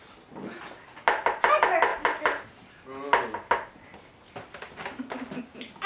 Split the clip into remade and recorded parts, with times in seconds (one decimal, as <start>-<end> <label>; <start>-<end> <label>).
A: 0.0-5.9 recorded